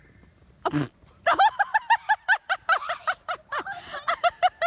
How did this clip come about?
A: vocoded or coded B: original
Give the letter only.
B